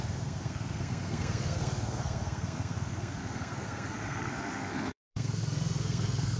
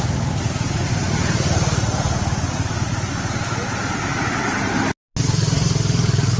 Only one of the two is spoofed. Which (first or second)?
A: first